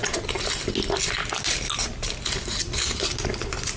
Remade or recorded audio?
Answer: recorded